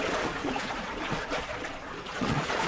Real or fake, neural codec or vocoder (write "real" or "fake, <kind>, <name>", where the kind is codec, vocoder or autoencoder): fake, vocoder, Vocos